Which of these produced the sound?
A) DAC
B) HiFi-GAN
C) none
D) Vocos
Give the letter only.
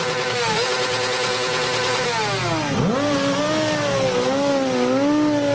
C